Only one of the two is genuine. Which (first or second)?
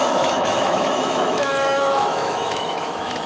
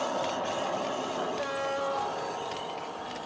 second